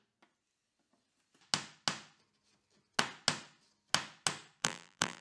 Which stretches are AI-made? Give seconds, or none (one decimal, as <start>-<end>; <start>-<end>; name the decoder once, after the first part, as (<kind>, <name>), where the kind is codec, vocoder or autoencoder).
4.6-5.2 (vocoder, BigVGAN v2)